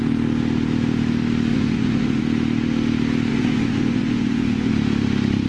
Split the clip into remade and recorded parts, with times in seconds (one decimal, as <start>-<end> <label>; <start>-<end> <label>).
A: 0.0-1.5 recorded; 1.5-2.2 remade; 2.2-3.3 recorded; 3.3-4.7 remade; 4.7-5.5 recorded